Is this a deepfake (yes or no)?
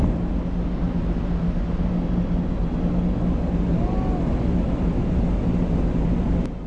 no